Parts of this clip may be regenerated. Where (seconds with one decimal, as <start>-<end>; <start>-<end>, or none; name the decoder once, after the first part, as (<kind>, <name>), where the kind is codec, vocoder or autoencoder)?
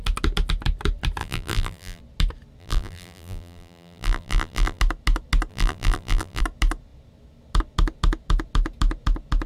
1.2-2.0 (vocoder, BigVGAN v2); 2.6-4.8; 5.5-6.4